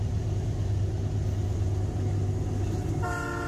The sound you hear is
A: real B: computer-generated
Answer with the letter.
A